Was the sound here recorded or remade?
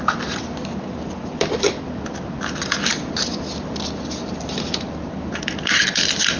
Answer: recorded